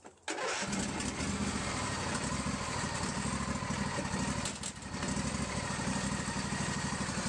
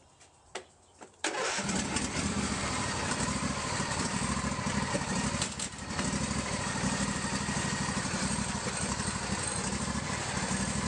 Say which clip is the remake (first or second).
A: second